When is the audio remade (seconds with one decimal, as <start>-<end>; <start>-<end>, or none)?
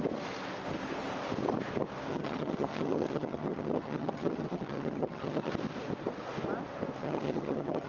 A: 2.1-5.5; 7.0-7.9